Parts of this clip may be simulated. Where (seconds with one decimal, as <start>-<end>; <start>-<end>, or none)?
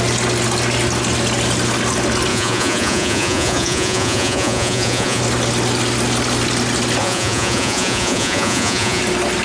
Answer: 2.3-5.2; 7.0-9.0